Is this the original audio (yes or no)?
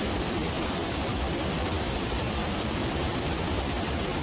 no